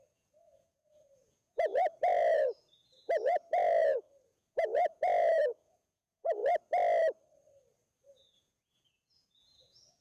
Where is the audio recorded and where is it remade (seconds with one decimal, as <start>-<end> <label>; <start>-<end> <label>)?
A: 0.0-6.4 remade; 6.4-8.1 recorded; 8.1-10.0 remade

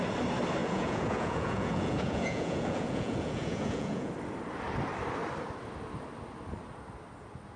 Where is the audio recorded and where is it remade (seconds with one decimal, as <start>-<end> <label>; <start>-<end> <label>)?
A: 0.0-0.6 recorded; 0.6-4.1 remade; 4.1-7.6 recorded

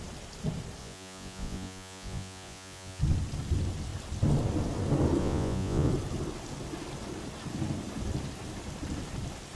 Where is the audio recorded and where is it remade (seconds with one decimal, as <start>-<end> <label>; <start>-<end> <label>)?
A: 0.0-0.8 recorded; 0.8-3.0 remade; 3.0-5.2 recorded; 5.2-5.9 remade; 5.9-9.6 recorded

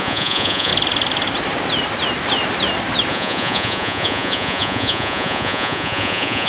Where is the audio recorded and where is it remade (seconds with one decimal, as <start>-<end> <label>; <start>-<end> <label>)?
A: 0.0-0.7 remade; 0.7-3.1 recorded; 3.1-6.5 remade

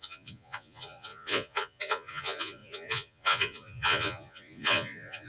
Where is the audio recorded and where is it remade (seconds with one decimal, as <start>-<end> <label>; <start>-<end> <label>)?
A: 0.0-5.3 remade

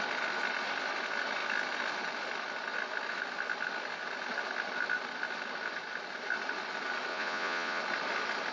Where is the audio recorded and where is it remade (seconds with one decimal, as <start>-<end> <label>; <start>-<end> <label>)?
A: 0.0-7.1 recorded; 7.1-7.8 remade; 7.8-8.5 recorded

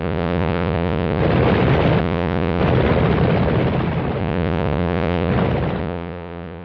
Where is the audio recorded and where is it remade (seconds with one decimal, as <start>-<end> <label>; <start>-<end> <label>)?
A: 0.0-1.2 remade; 1.2-2.0 recorded; 2.0-2.6 remade; 2.6-4.2 recorded; 4.2-5.3 remade; 5.3-5.8 recorded; 5.8-6.6 remade